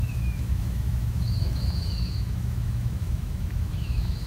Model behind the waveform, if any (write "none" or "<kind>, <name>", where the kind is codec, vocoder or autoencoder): autoencoder, DAC-VAE